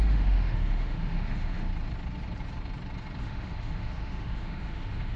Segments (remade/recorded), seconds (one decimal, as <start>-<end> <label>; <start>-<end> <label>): 0.0-1.7 remade; 1.7-3.2 recorded; 3.2-5.2 remade